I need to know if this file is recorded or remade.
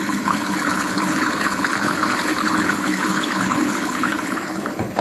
remade